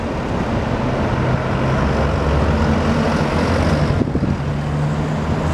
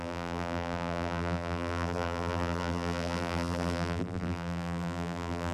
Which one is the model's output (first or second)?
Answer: second